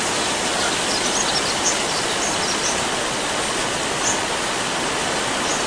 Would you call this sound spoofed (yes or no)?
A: no